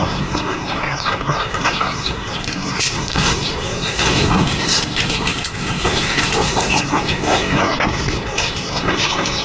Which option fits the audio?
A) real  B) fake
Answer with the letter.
B